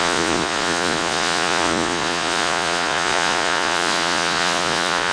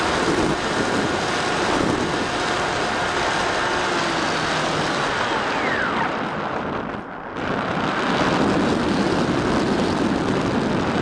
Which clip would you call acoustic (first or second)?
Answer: second